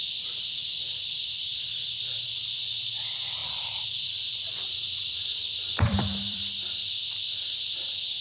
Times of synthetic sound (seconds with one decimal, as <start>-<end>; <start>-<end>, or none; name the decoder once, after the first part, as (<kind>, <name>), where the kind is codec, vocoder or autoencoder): 0.7-2.3 (vocoder, BigVGAN v2); 3.4-6.9